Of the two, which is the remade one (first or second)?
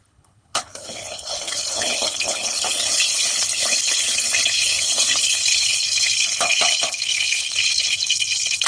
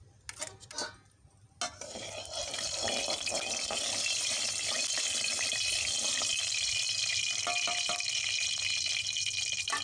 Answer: first